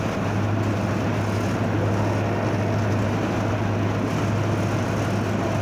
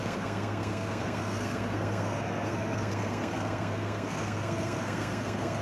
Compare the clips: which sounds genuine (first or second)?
first